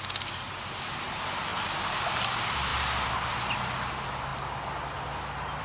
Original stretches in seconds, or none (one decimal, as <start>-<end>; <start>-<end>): 0.0-5.6